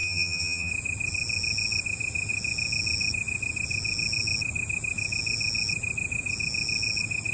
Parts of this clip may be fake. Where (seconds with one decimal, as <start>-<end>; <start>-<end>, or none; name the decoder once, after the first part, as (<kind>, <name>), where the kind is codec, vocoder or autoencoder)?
0.0-0.7 (vocoder, HiFi-GAN)

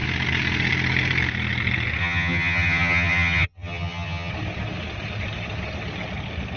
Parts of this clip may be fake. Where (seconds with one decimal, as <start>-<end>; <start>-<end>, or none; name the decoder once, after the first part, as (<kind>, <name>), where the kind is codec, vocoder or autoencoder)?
2.0-4.3 (vocoder, HiFi-GAN)